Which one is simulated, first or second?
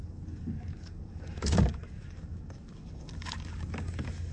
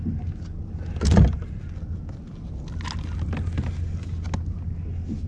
first